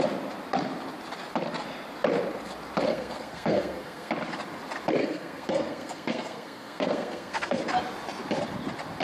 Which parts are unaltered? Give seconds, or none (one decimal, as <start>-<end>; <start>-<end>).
0.0-2.9; 4.1-5.0; 7.6-9.0